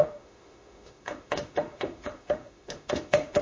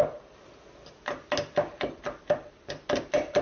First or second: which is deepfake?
first